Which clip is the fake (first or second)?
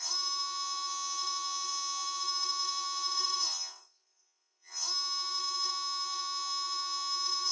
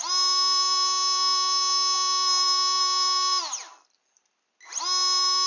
first